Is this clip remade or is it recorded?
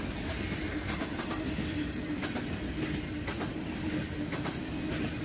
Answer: recorded